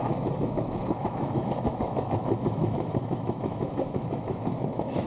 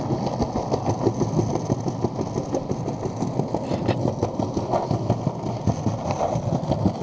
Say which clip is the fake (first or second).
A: first